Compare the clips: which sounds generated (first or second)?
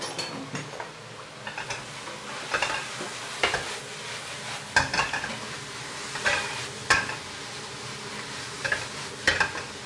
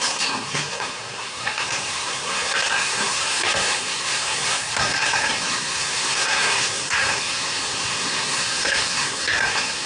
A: second